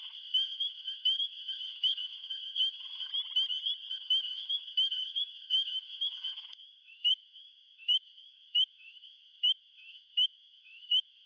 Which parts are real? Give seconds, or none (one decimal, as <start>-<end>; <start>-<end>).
3.1-3.9

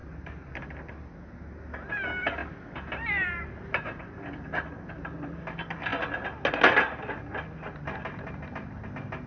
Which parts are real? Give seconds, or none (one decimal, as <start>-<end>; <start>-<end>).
0.7-2.4; 4.7-9.3